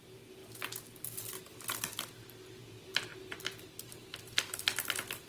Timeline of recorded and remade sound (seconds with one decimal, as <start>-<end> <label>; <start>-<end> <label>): 0.0-5.3 recorded